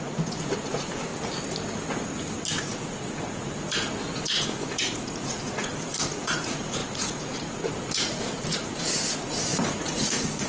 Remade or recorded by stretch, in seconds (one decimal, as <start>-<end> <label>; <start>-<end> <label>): 0.0-1.1 remade; 1.1-2.6 recorded; 2.6-10.5 remade